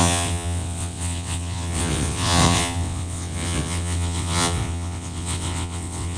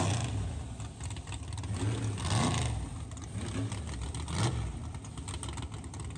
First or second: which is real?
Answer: second